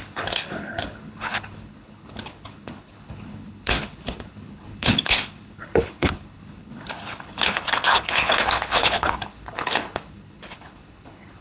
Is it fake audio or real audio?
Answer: fake